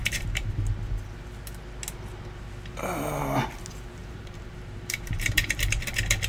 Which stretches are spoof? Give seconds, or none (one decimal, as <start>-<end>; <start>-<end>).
0.0-0.5; 4.0-5.8